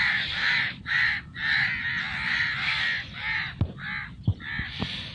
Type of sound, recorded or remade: recorded